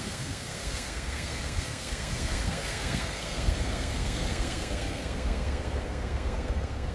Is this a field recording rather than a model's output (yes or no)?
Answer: no